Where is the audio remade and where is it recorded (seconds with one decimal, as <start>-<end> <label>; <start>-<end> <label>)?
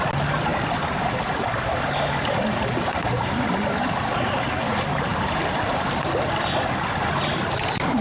0.0-0.5 remade; 0.5-4.5 recorded; 4.5-8.0 remade